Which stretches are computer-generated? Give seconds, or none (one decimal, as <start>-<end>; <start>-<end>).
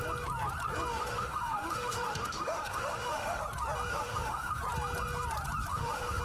0.9-3.4; 3.9-4.6; 5.7-6.2